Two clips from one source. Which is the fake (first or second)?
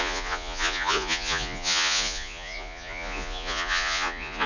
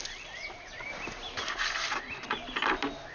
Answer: first